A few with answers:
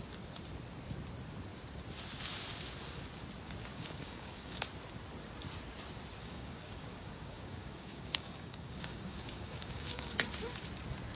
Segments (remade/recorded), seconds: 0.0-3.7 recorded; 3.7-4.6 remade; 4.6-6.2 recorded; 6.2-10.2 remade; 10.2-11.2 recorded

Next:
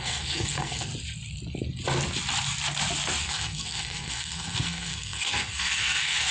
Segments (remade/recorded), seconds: 0.0-0.9 remade; 0.9-3.2 recorded; 3.2-6.3 remade

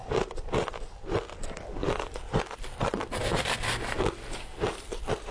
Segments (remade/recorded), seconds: 0.0-3.2 remade; 3.2-5.3 recorded

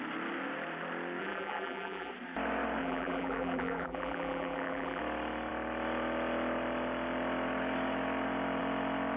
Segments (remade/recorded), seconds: 0.0-1.2 recorded; 1.2-2.1 remade; 2.1-2.8 recorded; 2.8-5.0 remade; 5.0-9.2 recorded

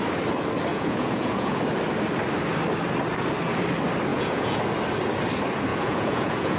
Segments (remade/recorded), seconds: 0.0-0.7 recorded; 0.7-1.6 remade; 1.6-4.1 recorded; 4.1-4.6 remade; 4.6-5.7 recorded; 5.7-6.6 remade

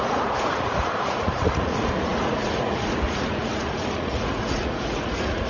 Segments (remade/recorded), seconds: 0.0-5.5 remade

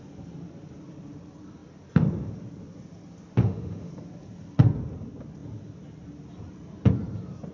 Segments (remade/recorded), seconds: 0.0-3.4 recorded; 3.4-3.9 remade; 3.9-7.5 recorded

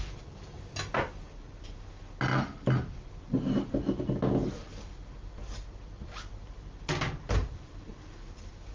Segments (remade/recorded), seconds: 0.0-8.7 recorded